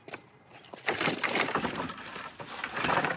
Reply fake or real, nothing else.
fake